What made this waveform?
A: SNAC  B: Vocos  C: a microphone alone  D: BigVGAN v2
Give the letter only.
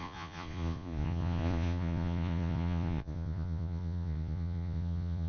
B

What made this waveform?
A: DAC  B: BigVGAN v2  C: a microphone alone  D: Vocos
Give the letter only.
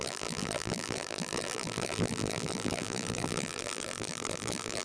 B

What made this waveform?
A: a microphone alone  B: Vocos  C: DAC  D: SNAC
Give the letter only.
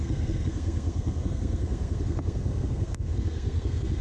D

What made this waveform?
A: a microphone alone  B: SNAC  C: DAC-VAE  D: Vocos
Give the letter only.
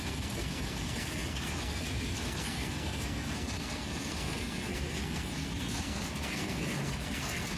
B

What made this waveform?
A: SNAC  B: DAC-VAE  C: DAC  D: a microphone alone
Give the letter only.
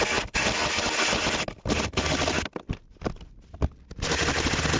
D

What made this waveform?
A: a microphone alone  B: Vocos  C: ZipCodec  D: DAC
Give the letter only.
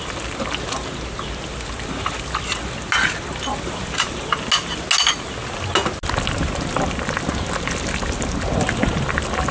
A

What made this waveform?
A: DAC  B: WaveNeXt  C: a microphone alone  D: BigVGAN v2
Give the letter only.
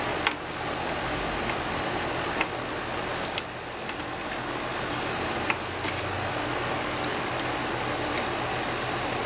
C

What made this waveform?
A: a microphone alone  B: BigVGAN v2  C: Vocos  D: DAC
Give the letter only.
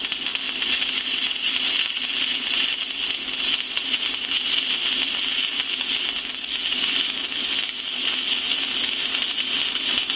A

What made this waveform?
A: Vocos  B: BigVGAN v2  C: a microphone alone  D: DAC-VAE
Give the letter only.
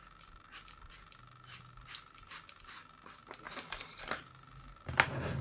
C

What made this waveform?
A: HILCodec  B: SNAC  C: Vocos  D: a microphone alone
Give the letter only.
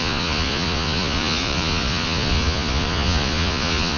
C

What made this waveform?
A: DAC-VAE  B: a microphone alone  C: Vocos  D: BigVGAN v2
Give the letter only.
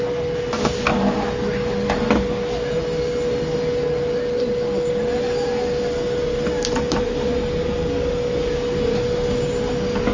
B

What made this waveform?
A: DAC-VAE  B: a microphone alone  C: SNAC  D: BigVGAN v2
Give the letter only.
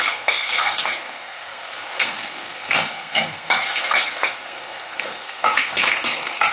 C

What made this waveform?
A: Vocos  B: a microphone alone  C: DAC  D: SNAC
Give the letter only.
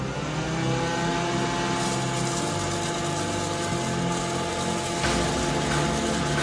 B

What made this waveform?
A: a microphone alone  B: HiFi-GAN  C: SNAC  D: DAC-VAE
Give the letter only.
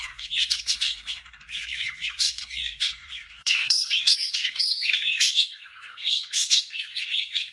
C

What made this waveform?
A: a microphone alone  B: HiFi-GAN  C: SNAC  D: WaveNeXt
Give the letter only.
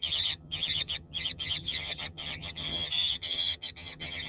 B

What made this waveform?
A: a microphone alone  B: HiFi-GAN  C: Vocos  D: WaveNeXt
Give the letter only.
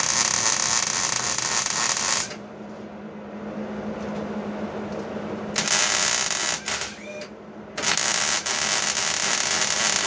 A